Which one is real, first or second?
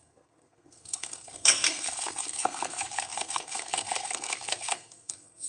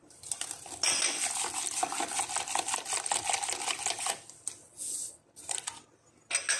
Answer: second